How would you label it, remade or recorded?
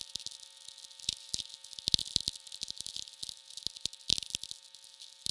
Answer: recorded